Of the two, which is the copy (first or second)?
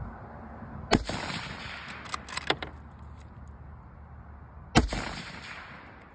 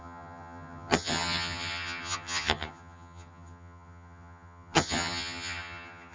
second